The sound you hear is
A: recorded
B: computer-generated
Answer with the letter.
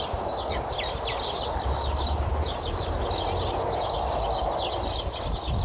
A